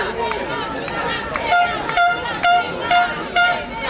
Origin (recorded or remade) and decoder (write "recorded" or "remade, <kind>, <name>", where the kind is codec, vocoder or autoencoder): recorded